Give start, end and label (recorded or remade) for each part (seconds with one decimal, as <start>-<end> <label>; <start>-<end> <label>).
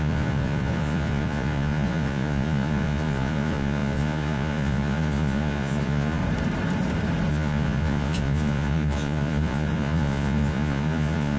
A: 0.0-6.2 remade; 6.2-7.3 recorded; 7.3-11.4 remade